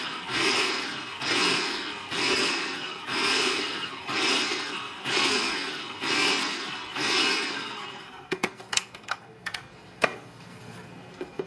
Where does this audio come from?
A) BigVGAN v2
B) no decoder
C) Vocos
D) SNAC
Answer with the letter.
D